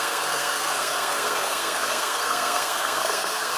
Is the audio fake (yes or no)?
yes